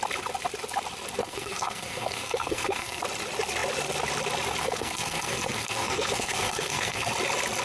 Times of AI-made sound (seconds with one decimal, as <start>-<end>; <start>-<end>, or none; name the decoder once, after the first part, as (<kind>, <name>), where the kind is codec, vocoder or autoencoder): 1.2-3.0 (codec, SNAC); 4.6-7.1